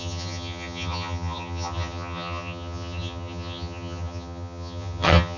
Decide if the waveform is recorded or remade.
remade